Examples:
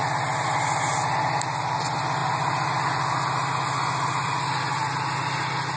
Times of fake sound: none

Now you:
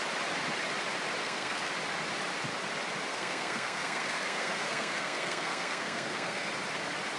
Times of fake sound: 1.2-1.7 (codec, SNAC); 3.1-6.5

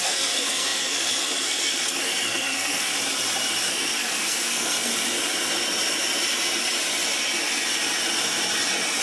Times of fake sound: 0.0-2.9 (codec, SNAC); 3.7-4.9

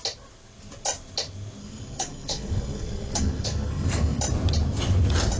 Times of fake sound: 1.6-4.2 (codec, SNAC)

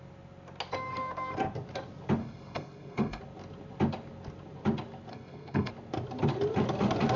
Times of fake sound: 2.2-3.2 (codec, SNAC); 5.1-5.7